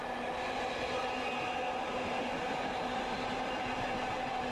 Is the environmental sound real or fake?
real